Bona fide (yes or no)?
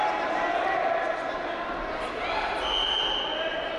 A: yes